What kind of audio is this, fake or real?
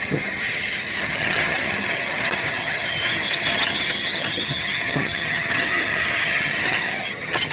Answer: fake